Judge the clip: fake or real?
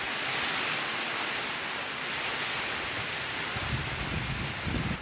real